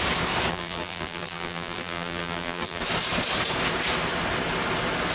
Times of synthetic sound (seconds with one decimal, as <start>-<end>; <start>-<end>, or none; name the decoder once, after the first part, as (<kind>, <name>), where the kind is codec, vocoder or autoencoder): 0.5-2.8 (vocoder, BigVGAN v2)